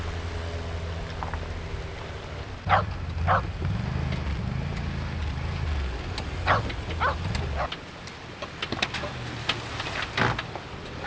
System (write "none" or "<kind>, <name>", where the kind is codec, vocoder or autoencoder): none